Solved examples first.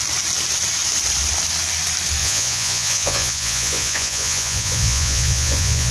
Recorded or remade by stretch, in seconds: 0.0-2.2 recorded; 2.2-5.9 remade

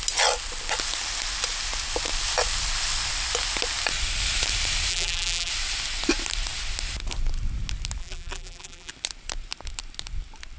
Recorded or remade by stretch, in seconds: 0.0-4.9 recorded; 4.9-5.5 remade; 5.5-8.0 recorded; 8.0-8.9 remade; 8.9-10.6 recorded